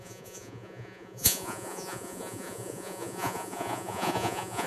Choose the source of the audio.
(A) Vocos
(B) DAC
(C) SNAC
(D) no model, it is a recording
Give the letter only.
A